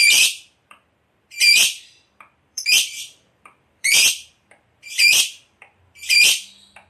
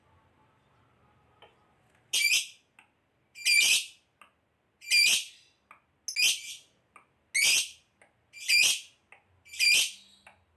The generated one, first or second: first